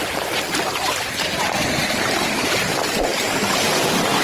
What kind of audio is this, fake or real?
real